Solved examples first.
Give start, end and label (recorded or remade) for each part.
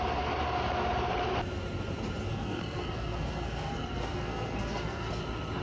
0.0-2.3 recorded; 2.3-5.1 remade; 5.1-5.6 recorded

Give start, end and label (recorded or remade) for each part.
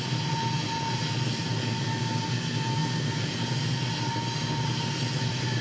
0.0-5.6 recorded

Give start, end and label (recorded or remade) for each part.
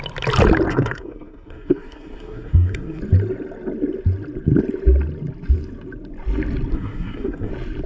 0.0-0.7 recorded; 0.7-3.0 remade; 3.0-6.7 recorded; 6.7-7.5 remade; 7.5-7.9 recorded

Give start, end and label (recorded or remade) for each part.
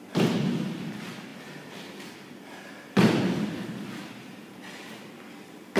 0.0-5.8 recorded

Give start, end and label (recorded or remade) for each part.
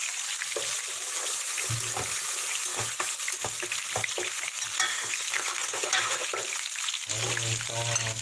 0.0-4.9 recorded; 4.9-6.3 remade; 6.3-8.2 recorded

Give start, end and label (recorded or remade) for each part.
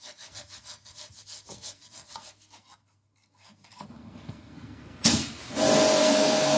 0.0-5.4 remade; 5.4-6.0 recorded; 6.0-6.6 remade